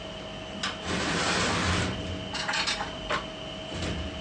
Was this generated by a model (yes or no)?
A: no